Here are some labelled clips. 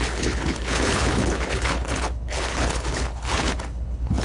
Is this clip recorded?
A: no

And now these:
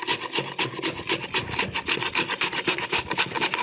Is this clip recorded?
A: yes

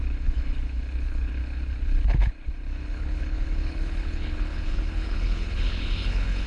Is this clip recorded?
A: no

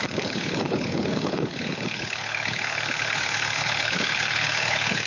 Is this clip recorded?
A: no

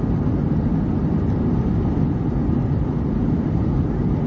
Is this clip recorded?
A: yes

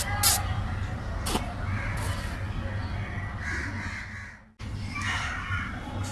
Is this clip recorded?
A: yes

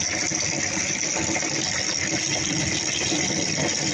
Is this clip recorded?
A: yes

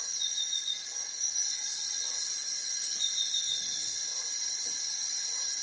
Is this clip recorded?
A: yes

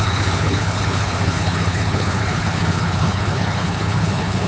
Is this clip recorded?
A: no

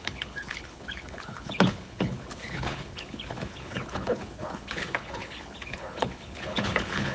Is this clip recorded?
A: no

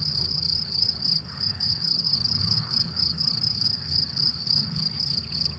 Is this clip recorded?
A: no